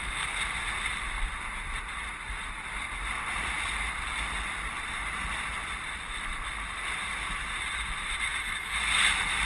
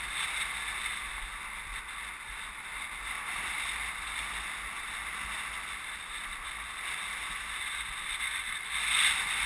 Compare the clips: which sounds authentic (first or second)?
second